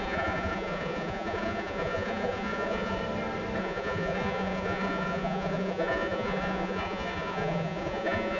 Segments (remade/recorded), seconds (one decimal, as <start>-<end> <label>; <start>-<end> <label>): 0.0-3.0 remade; 3.0-3.6 recorded; 3.6-8.4 remade